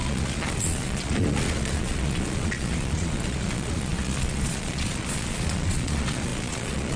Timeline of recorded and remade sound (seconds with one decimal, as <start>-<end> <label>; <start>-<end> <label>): 0.0-7.0 remade